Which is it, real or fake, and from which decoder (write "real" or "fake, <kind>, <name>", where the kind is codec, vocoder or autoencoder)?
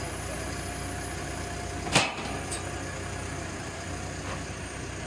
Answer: real